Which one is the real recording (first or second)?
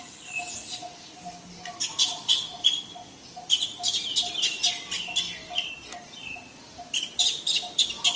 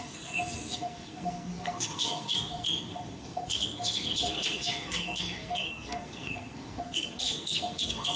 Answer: first